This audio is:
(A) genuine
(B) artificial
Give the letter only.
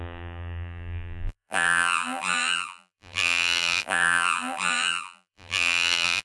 B